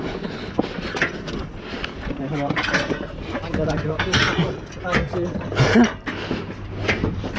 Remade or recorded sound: recorded